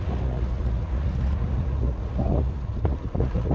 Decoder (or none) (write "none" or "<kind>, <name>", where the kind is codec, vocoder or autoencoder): vocoder, Vocos